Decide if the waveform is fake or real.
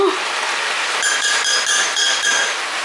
real